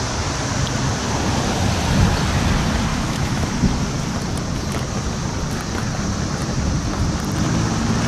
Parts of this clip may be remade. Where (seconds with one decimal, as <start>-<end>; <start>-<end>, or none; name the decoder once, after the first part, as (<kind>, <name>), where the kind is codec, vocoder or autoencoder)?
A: 2.9-3.5 (autoencoder, DAC-VAE)